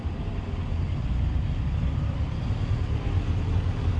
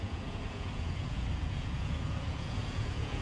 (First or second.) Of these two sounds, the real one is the first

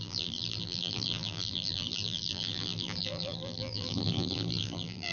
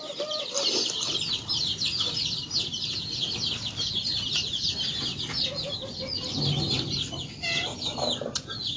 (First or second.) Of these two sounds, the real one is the second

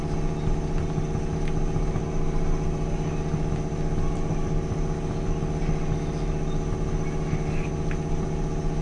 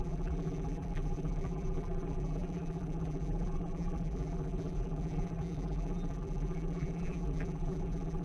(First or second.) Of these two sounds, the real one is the first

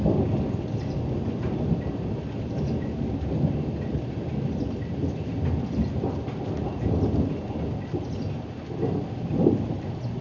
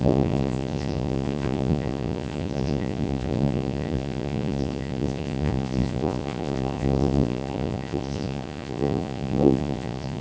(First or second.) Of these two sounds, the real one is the first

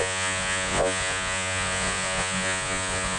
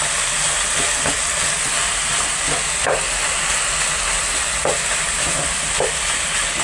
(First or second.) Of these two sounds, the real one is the second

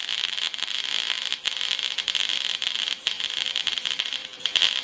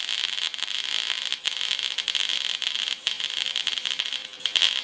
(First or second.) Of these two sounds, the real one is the second